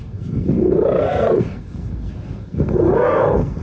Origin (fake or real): fake